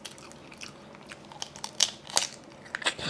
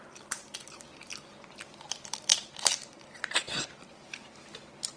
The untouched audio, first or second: first